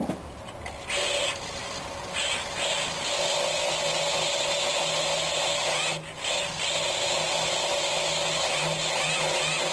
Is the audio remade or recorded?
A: recorded